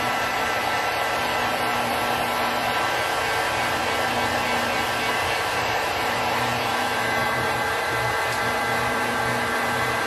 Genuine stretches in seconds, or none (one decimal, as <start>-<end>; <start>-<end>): 2.0-5.1